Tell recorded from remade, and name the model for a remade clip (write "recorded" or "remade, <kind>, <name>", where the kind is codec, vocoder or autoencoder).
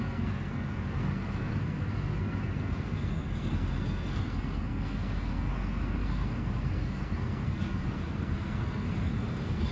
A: remade, codec, SNAC